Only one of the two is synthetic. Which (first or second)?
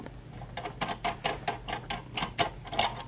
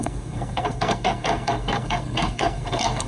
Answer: second